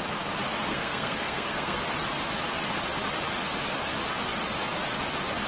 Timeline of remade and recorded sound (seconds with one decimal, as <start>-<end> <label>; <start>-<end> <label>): 0.0-0.7 recorded; 0.7-1.8 remade; 1.8-5.5 recorded